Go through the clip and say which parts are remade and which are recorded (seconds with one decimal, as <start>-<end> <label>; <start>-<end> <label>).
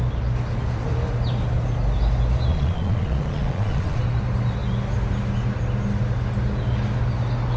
0.0-2.5 recorded; 2.5-4.0 remade; 4.0-7.6 recorded